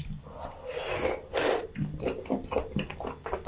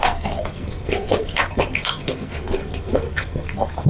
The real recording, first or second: first